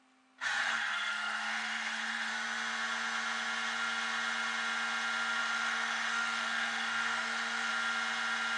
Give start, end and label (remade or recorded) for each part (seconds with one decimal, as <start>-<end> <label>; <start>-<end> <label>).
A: 0.0-0.6 recorded; 0.6-2.3 remade; 2.3-5.4 recorded; 5.4-7.7 remade; 7.7-8.6 recorded